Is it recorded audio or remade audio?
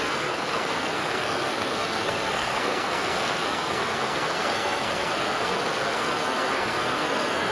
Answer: remade